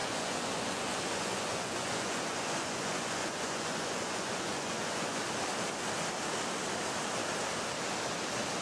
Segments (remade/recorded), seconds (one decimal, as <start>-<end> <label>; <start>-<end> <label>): 0.0-5.2 remade; 5.2-8.6 recorded